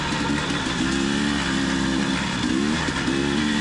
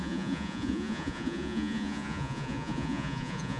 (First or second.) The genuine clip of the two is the first